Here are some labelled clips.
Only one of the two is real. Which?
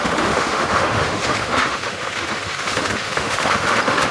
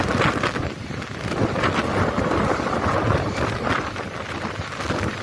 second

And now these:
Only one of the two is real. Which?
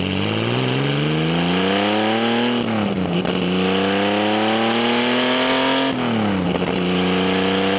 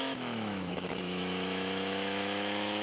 first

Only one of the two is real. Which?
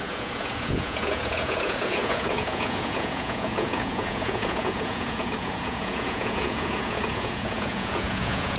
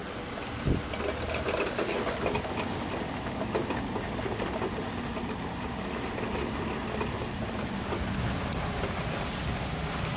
second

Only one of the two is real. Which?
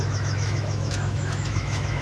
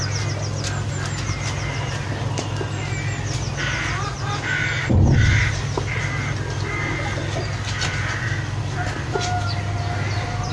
second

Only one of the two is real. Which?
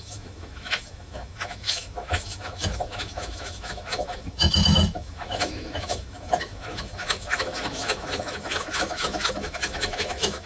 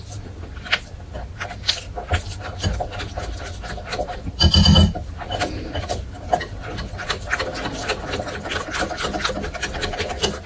second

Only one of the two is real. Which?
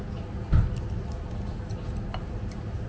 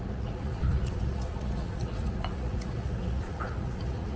first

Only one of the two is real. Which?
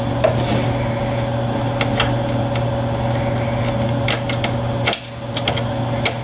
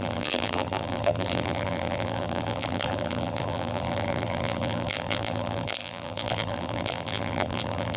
first